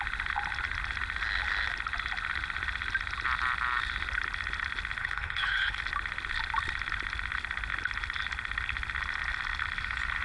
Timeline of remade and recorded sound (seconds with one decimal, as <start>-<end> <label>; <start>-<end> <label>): 0.0-5.0 recorded; 5.0-5.8 remade; 5.8-10.2 recorded